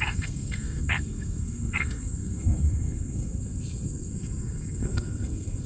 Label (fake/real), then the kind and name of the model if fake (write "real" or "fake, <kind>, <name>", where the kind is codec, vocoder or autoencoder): fake, codec, SNAC